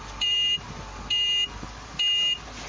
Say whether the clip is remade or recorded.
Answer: recorded